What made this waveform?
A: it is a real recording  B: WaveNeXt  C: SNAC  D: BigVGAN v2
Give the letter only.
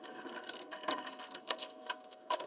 C